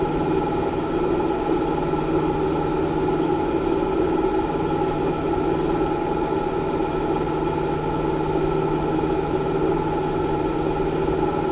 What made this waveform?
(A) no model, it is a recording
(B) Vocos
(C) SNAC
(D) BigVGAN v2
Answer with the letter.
A